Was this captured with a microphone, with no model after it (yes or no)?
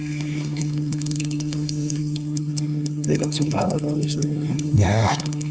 no